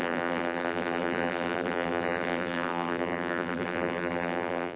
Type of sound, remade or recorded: remade